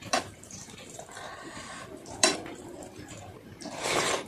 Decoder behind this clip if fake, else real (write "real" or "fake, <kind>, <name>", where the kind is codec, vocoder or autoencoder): fake, vocoder, BigVGAN v2